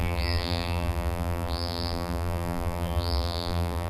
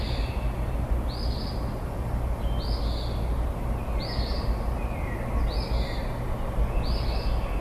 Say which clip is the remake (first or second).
first